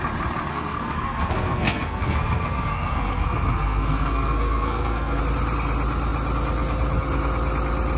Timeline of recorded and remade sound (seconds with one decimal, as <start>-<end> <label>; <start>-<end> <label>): 0.0-0.5 recorded; 0.5-5.2 remade; 5.2-8.0 recorded